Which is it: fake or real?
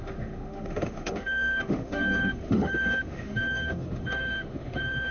fake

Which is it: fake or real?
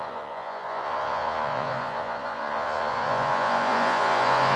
fake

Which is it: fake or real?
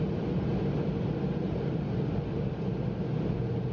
real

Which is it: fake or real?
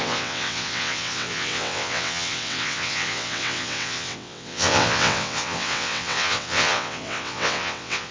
fake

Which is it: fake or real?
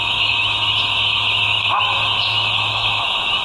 fake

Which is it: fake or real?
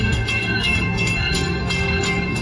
fake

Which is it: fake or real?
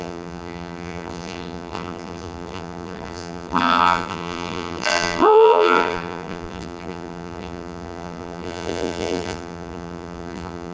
fake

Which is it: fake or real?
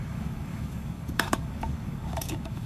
fake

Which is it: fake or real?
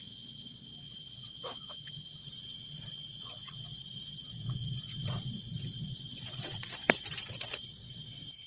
fake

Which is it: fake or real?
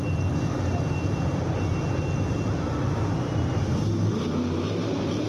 real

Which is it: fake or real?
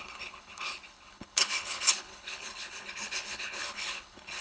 fake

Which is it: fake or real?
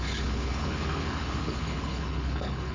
fake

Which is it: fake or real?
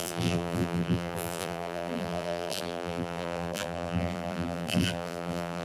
fake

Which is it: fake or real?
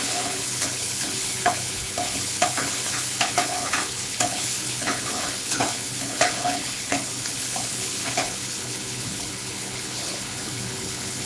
fake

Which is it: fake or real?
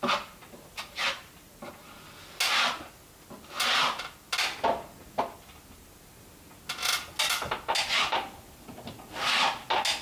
real